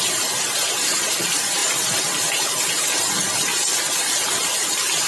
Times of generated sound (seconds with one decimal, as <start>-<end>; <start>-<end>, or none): none